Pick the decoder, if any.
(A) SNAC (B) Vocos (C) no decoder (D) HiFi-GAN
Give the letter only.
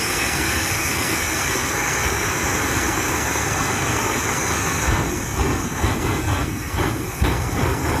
A